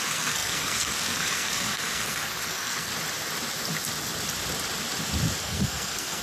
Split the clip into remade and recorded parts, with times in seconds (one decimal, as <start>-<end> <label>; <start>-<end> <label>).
0.0-2.9 remade; 2.9-5.4 recorded; 5.4-6.2 remade